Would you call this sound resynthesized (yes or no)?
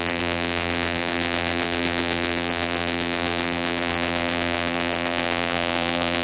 yes